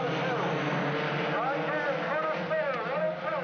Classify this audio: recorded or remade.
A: recorded